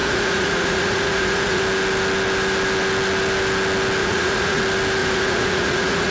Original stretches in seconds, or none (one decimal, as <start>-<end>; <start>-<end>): 1.6-4.0; 4.6-5.0